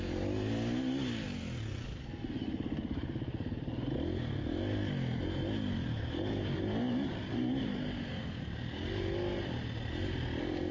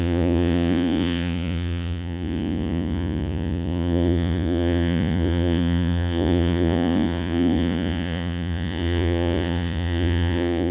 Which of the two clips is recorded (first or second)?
first